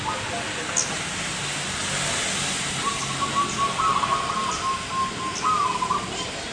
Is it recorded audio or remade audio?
recorded